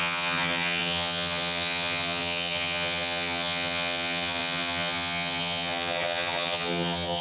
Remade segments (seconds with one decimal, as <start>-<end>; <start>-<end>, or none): 0.0-7.2